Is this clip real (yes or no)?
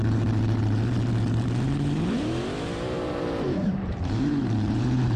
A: no